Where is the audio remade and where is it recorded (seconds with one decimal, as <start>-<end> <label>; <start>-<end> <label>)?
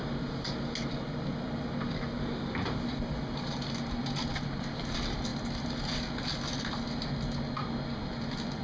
0.0-8.6 recorded